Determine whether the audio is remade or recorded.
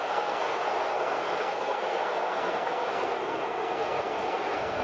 remade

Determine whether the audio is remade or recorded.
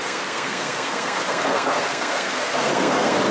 remade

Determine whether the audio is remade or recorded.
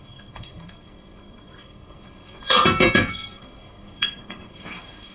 remade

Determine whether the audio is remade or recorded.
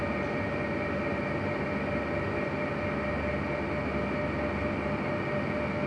recorded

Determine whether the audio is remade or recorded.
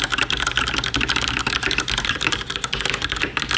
recorded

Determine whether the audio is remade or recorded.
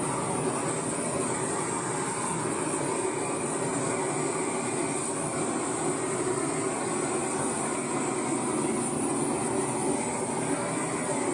recorded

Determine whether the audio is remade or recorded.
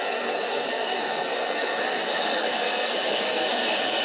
remade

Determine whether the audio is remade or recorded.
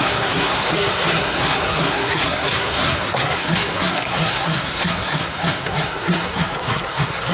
remade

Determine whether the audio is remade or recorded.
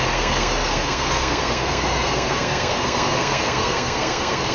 remade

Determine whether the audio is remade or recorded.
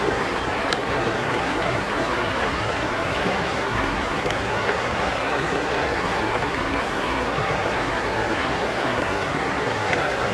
remade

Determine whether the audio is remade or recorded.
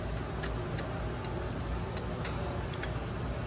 recorded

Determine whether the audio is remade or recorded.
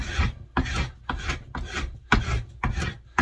recorded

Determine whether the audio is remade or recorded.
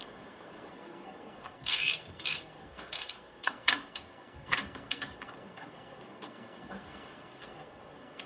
remade